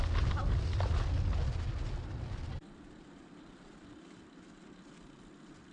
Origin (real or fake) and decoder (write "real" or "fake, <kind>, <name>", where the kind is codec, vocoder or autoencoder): real